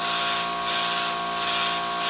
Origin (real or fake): real